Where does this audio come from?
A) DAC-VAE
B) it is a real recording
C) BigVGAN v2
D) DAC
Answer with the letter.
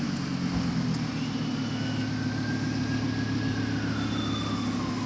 B